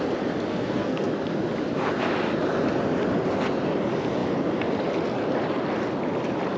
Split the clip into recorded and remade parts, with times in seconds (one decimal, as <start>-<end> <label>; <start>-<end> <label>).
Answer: 0.0-0.5 recorded; 0.5-1.1 remade; 1.1-6.6 recorded